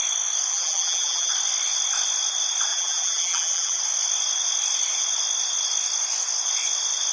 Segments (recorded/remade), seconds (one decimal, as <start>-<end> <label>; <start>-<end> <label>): 0.0-0.5 recorded; 0.5-1.3 remade; 1.3-2.7 recorded; 2.7-3.8 remade; 3.8-7.1 recorded